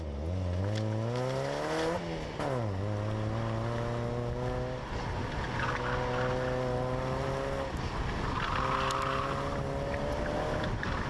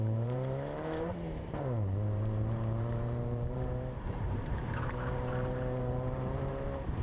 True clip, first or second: first